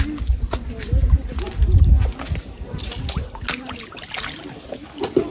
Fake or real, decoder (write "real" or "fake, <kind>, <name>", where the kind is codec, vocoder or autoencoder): real